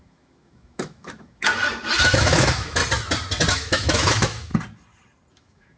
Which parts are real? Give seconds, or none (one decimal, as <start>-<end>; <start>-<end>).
1.5-2.0; 2.8-3.5; 4.5-5.3